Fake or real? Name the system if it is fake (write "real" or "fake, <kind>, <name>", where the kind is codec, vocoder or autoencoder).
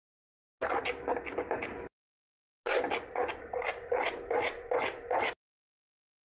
real